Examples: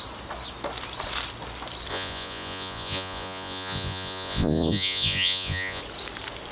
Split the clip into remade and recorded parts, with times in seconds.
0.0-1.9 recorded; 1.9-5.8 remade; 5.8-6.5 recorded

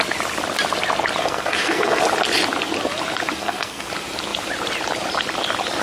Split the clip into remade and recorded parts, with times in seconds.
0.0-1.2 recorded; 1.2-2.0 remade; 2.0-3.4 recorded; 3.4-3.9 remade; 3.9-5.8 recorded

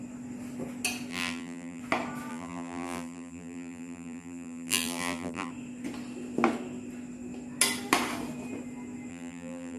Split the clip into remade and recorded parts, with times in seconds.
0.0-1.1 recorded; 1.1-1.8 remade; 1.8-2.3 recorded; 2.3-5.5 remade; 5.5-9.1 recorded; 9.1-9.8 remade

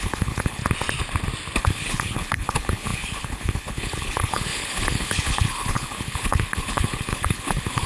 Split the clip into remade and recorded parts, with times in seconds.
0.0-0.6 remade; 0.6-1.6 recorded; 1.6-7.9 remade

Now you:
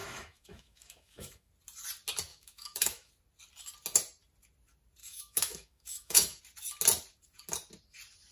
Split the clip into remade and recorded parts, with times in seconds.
0.0-1.5 remade; 1.5-2.3 recorded; 2.3-3.1 remade; 3.1-5.0 recorded; 5.0-6.4 remade; 6.4-8.3 recorded